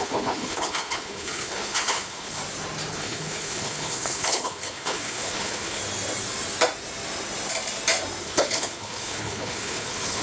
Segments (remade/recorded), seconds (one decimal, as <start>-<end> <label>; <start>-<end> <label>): 0.0-2.4 remade; 2.4-2.9 recorded; 2.9-5.8 remade; 5.8-8.2 recorded; 8.2-10.2 remade